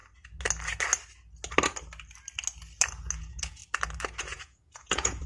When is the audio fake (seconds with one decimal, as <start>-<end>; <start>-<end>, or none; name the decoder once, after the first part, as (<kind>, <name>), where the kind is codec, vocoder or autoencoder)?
3.2-3.6 (vocoder, Vocos); 4.2-5.3